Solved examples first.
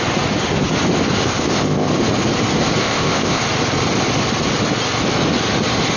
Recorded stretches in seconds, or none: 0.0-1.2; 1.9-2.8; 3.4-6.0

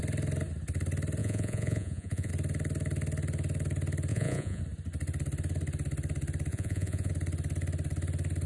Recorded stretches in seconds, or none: 0.0-1.2; 2.3-4.1; 4.6-6.5; 7.1-8.5

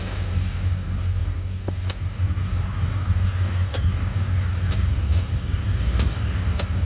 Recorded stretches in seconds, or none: none

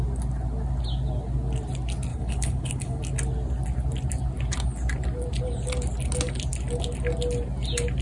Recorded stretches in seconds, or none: 0.0-2.1; 3.0-8.0

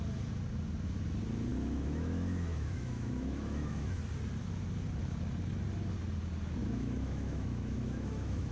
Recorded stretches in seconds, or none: 0.0-1.5; 4.0-6.6